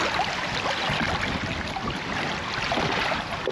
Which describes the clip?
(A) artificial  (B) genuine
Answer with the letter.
B